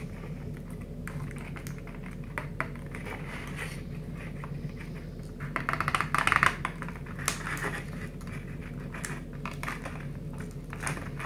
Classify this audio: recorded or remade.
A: recorded